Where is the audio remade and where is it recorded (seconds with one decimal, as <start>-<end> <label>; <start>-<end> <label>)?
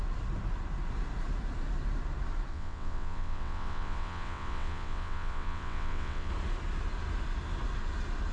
0.0-2.5 recorded; 2.5-6.3 remade; 6.3-8.3 recorded